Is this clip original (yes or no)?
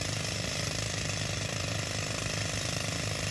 yes